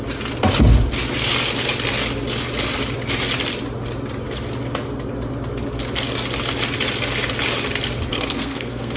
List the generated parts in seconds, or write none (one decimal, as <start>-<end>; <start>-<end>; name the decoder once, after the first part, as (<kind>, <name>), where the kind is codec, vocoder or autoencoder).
8.1-9.0 (codec, SNAC)